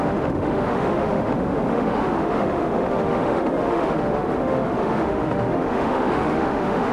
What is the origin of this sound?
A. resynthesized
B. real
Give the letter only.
A